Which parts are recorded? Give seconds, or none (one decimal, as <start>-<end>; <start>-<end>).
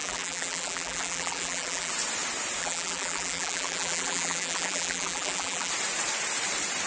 1.9-2.6; 5.7-6.9